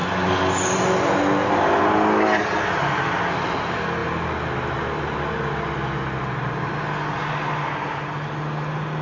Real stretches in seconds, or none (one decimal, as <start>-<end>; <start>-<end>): 0.0-9.0